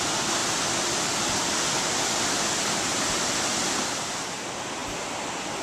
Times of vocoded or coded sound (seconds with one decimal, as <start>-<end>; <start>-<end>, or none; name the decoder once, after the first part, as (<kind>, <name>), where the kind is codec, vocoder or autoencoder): none